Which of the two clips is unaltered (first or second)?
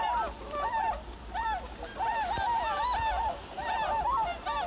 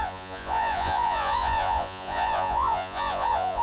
first